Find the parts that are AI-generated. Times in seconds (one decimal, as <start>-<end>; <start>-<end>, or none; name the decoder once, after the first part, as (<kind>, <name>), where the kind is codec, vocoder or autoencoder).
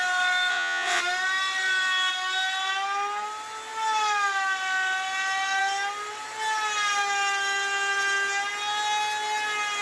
0.5-1.0 (vocoder, WaveNeXt)